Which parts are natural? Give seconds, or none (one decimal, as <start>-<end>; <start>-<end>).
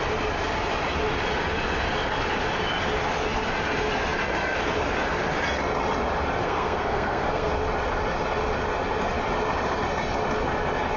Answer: 0.0-6.4; 7.5-11.0